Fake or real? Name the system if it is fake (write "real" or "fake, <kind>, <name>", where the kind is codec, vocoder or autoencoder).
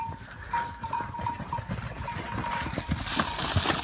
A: real